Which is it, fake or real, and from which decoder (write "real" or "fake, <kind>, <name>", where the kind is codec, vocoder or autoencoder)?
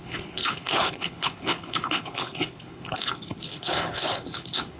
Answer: fake, codec, HILCodec